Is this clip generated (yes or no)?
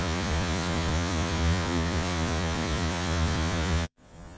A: yes